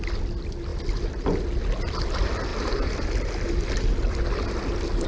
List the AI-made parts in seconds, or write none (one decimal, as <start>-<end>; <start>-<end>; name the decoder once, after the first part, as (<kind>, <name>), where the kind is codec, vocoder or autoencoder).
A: none